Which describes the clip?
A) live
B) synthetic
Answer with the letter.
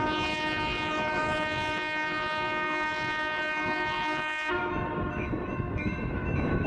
B